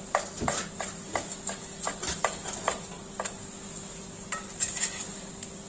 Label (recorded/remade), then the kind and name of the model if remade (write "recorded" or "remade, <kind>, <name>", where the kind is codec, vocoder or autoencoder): recorded